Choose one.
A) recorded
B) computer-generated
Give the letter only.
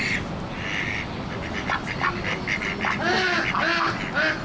A